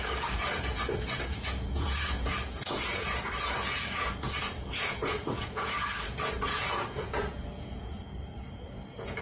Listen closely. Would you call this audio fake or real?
fake